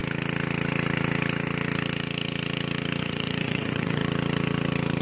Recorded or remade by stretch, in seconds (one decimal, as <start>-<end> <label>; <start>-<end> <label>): 0.0-3.0 recorded; 3.0-4.0 remade; 4.0-5.0 recorded